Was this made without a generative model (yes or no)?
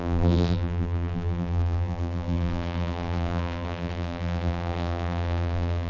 no